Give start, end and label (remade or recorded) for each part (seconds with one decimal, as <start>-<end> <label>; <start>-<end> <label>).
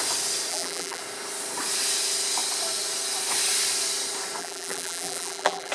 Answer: 0.0-0.5 recorded; 0.5-1.0 remade; 1.0-4.4 recorded; 4.4-5.7 remade